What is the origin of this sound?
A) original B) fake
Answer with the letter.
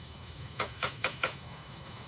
B